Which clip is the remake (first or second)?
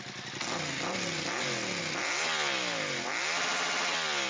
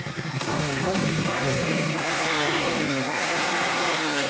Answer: second